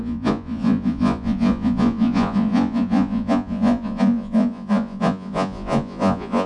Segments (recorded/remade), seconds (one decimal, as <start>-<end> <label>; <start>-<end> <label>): 0.0-6.5 remade